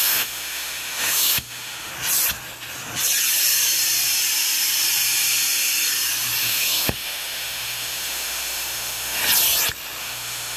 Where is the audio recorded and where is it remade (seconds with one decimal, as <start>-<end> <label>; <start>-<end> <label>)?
0.0-1.9 remade; 1.9-6.4 recorded; 6.4-9.2 remade; 9.2-10.0 recorded; 10.0-10.6 remade